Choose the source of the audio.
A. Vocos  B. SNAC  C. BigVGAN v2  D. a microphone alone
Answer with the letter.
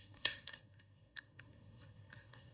B